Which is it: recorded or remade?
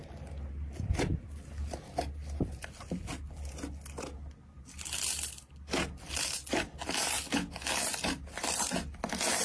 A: recorded